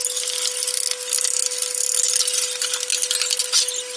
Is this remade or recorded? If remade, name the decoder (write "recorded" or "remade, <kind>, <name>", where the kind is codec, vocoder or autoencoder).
recorded